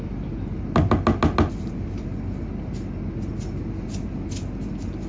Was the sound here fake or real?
real